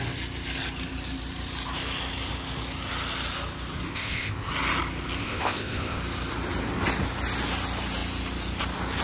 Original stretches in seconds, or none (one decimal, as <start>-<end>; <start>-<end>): 0.0-3.9; 4.5-5.2; 6.0-9.0